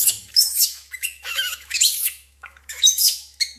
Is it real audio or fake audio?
fake